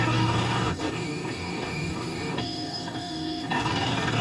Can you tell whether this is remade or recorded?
remade